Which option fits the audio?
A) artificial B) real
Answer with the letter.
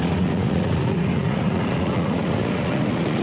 A